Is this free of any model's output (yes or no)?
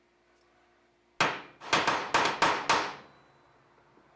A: yes